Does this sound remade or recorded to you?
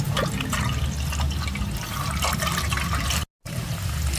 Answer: recorded